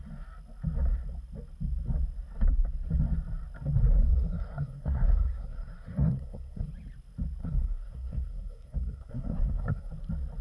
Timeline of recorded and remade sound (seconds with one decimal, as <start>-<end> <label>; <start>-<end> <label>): 0.0-4.1 recorded; 4.1-6.7 remade; 6.7-7.4 recorded; 7.4-9.9 remade; 9.9-10.4 recorded